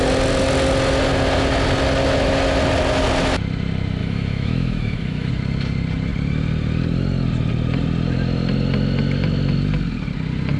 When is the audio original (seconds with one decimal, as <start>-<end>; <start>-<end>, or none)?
0.0-4.0; 5.3-10.6